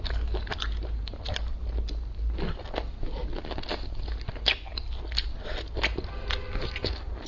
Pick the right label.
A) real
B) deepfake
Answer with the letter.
A